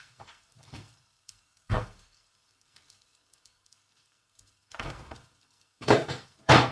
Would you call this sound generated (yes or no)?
yes